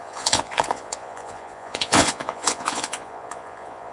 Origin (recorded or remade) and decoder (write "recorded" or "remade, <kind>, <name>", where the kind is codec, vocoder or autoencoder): remade, vocoder, Vocos